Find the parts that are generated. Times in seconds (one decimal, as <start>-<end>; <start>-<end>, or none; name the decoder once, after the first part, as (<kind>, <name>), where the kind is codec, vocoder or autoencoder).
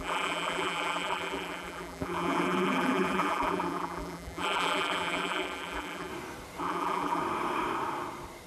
0.0-6.1 (vocoder, BigVGAN v2); 6.6-7.2